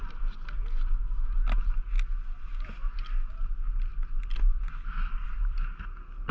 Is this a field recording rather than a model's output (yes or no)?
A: yes